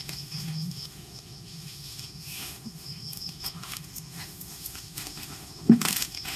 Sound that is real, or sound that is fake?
fake